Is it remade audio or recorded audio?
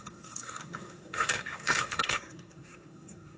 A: remade